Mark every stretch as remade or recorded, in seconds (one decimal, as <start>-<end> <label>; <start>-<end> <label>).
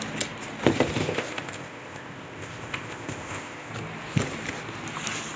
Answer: 0.0-1.0 recorded; 1.0-3.7 remade; 3.7-5.4 recorded